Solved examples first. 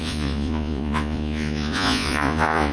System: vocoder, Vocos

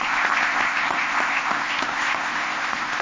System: codec, ZipCodec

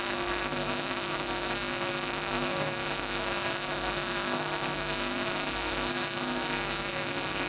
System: codec, SNAC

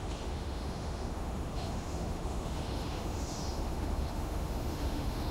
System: autoencoder, DAC-VAE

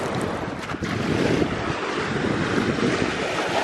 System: none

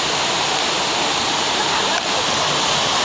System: none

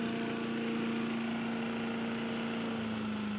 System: none